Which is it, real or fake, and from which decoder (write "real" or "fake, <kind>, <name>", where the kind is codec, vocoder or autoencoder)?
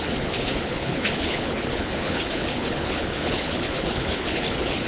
fake, codec, HILCodec